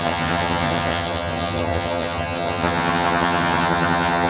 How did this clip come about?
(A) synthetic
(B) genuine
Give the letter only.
A